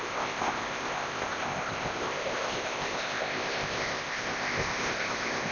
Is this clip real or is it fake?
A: fake